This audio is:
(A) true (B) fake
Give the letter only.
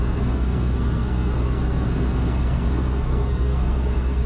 B